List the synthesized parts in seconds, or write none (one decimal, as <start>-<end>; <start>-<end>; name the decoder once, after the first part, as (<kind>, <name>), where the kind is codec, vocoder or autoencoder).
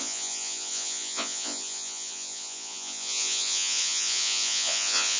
0.0-5.2 (vocoder, Vocos)